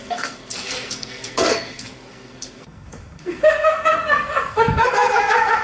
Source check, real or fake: fake